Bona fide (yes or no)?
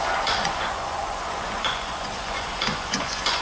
no